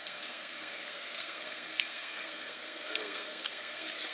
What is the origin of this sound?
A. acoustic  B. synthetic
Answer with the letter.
B